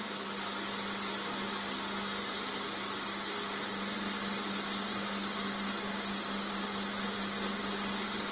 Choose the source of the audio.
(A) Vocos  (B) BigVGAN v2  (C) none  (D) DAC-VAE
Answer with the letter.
C